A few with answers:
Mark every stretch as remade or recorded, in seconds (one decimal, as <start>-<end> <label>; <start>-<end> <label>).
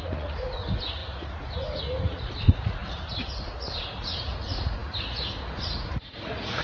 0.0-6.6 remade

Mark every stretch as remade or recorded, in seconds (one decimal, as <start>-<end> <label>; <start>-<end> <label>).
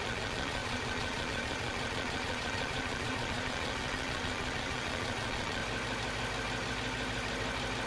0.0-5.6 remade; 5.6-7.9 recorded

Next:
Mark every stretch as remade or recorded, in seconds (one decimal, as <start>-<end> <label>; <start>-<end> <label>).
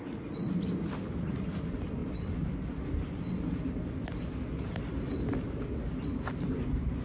0.0-7.0 recorded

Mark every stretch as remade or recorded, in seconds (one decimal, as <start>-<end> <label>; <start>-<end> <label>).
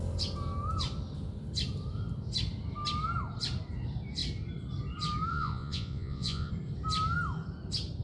0.0-5.3 recorded; 5.3-6.5 remade; 6.5-8.0 recorded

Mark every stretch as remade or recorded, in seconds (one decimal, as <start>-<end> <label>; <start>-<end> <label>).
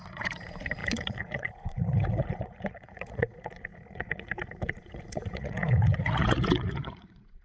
0.0-7.4 remade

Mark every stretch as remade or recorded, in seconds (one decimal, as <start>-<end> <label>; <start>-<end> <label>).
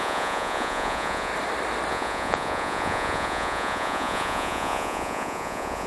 0.0-1.3 remade; 1.3-1.9 recorded; 1.9-5.9 remade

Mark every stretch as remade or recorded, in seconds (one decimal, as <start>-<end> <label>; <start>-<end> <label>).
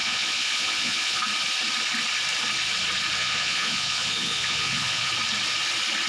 0.0-1.2 remade; 1.2-3.2 recorded; 3.2-5.1 remade; 5.1-6.1 recorded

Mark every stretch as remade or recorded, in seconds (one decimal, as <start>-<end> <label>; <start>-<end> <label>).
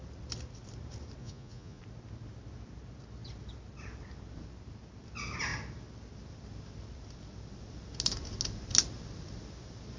0.0-1.2 recorded; 1.2-1.8 remade; 1.8-10.0 recorded